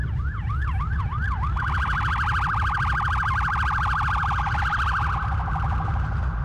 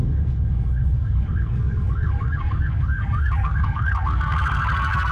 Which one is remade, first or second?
second